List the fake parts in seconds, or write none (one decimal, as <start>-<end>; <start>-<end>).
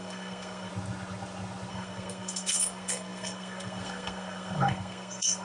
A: 0.0-0.7; 1.7-5.4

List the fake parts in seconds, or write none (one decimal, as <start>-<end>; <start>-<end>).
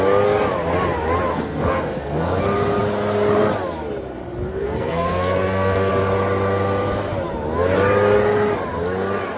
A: 1.3-2.4; 4.5-5.9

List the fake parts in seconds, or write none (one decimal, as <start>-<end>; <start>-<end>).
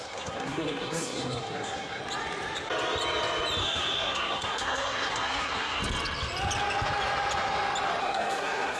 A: 0.0-2.0; 3.6-5.8; 8.0-8.8